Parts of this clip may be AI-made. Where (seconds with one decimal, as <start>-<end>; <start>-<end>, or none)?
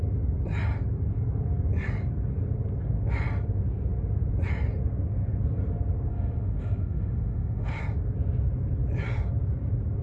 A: 6.1-7.8